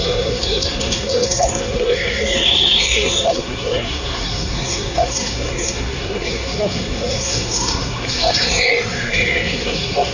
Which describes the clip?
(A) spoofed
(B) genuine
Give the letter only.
A